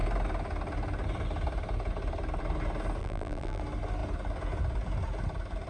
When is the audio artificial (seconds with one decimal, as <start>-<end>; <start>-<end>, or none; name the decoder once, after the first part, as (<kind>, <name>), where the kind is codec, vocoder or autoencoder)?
3.0-3.6 (vocoder, BigVGAN v2)